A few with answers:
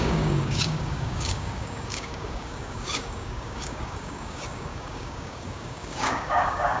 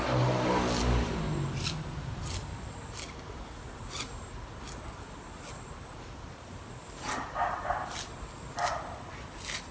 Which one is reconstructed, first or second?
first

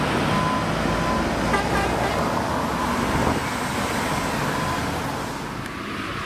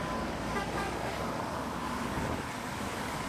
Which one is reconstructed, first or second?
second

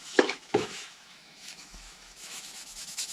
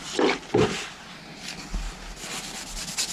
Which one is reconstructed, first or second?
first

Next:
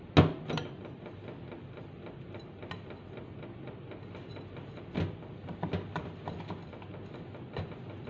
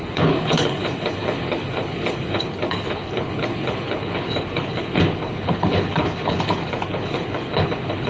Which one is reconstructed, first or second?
second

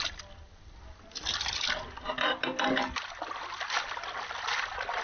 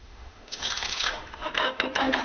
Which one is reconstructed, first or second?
second